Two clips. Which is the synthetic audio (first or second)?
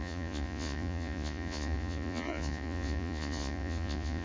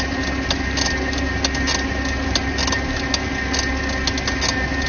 first